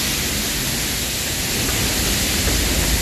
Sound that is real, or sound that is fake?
real